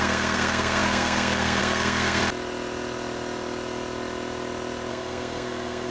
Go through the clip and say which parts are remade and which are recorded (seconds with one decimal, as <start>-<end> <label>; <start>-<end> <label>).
0.0-2.2 remade; 2.2-4.9 recorded; 4.9-5.9 remade